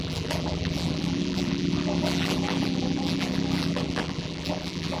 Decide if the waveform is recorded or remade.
remade